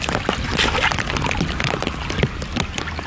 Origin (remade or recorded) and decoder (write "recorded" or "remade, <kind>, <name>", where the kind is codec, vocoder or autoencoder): recorded